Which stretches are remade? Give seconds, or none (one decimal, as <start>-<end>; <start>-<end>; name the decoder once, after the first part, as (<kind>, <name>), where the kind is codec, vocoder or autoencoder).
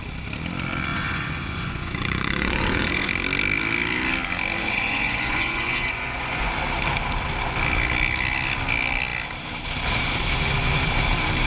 0.9-3.1 (vocoder, Vocos); 4.6-6.5